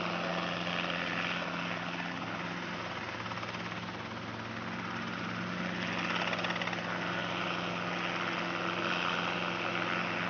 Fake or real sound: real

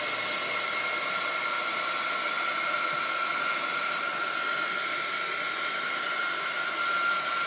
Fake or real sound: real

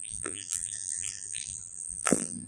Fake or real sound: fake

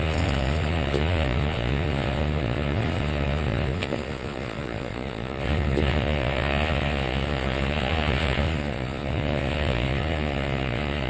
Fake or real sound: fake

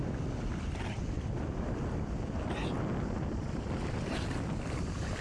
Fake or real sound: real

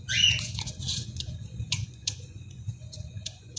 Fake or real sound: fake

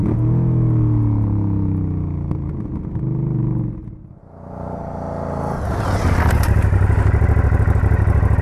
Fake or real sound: real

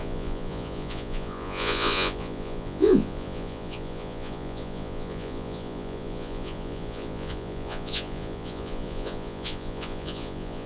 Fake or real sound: fake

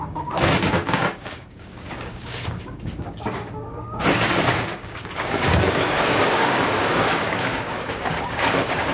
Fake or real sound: fake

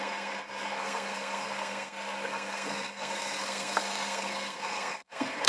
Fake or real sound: fake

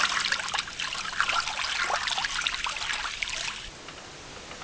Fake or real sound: real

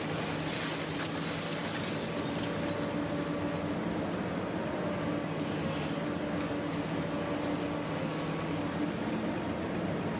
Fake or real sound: real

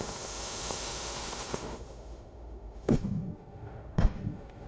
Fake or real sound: fake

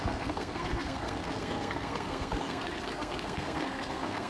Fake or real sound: fake